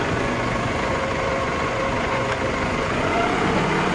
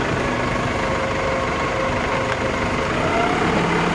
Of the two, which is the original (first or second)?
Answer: second